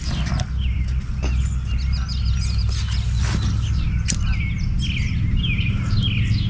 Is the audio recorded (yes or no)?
yes